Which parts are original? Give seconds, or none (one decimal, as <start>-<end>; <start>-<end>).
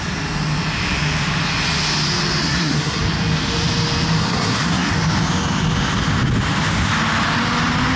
0.0-2.4; 3.0-4.2; 4.9-8.0